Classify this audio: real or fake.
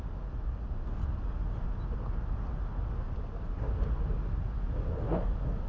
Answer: real